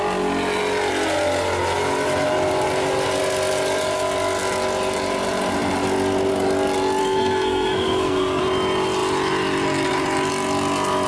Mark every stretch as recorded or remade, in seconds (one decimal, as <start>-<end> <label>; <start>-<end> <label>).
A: 0.0-7.0 recorded; 7.0-8.4 remade; 8.4-11.1 recorded